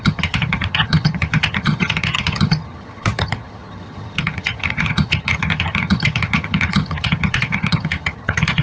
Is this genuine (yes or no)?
no